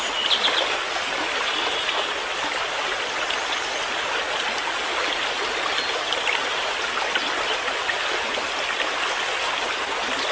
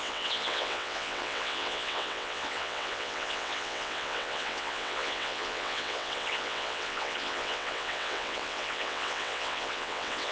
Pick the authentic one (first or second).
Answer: first